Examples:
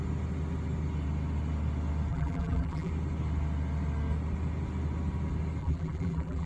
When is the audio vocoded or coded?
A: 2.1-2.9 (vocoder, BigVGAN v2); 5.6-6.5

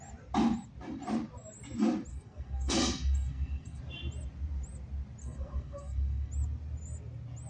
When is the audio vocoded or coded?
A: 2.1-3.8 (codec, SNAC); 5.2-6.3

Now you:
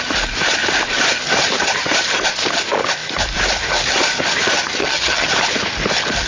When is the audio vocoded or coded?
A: 4.8-5.3 (vocoder, HiFi-GAN)

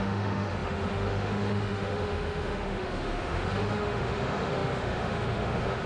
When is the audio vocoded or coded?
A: 0.0-5.9 (autoencoder, DAC-VAE)